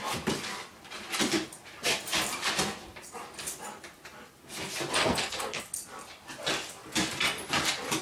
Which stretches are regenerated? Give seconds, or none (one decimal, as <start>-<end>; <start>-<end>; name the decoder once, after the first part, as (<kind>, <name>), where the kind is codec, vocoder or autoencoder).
5.0-5.6 (codec, SNAC)